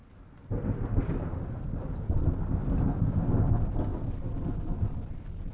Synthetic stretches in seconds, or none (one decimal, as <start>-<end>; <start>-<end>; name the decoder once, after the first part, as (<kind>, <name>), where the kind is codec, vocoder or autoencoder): none